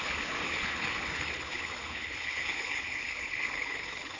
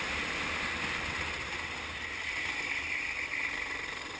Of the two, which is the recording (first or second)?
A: second